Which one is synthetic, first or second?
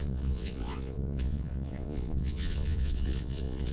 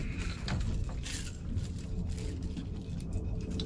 first